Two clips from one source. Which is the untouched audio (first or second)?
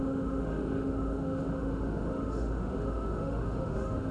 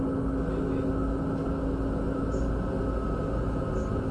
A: second